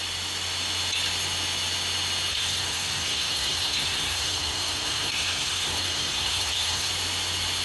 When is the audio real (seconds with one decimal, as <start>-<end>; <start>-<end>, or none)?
0.0-2.3; 6.9-7.6